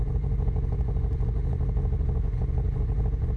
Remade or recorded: remade